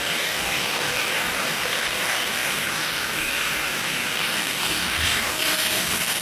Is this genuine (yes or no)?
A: no